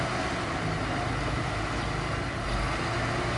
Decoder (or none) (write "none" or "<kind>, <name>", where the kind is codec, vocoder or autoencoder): none